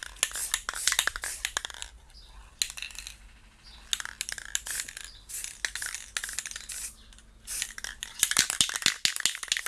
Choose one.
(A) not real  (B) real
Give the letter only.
B